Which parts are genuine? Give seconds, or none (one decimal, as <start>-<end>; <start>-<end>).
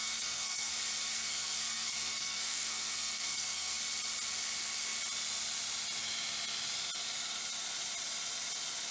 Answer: 0.7-1.1; 3.8-8.9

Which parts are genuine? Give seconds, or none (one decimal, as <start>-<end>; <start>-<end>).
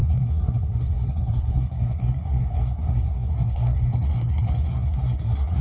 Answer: none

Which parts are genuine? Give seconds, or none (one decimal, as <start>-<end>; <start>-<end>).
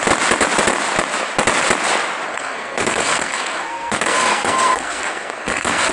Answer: 0.0-2.3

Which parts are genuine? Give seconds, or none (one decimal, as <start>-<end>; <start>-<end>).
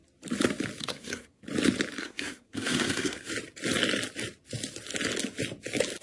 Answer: 0.0-0.8; 1.4-2.0; 3.3-6.0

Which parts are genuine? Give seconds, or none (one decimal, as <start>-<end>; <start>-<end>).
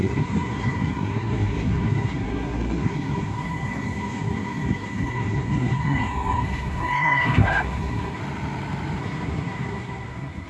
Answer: 8.2-9.0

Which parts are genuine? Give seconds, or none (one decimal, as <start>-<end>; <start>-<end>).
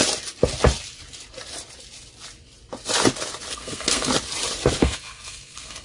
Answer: 0.0-3.5; 4.1-4.8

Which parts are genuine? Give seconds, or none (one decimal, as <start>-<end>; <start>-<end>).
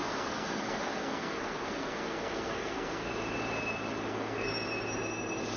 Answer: 3.1-4.1; 4.5-5.6